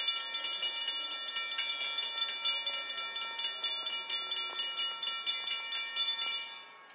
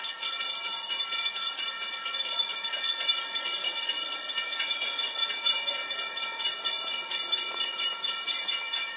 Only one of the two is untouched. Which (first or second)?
first